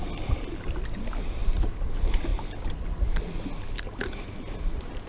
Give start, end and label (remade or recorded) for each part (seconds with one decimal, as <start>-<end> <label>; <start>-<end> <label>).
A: 0.0-5.1 recorded